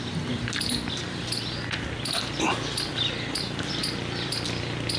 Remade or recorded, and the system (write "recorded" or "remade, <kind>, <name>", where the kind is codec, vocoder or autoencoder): recorded